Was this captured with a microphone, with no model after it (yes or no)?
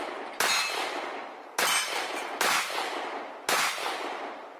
yes